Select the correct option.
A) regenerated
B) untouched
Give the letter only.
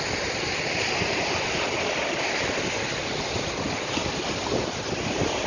B